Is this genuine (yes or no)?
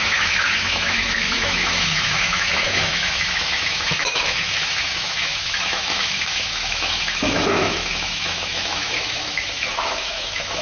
no